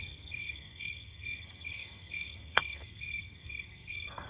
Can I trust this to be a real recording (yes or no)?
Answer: no